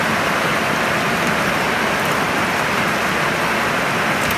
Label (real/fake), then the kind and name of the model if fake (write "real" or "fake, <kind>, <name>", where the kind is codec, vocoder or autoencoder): real